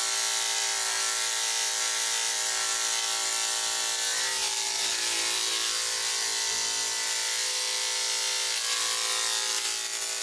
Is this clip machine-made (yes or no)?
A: no